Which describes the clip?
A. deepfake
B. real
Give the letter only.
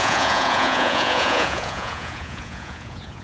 A